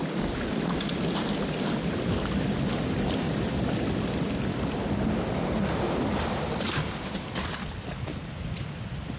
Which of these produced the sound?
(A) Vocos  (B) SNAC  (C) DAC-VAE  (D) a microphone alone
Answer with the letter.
D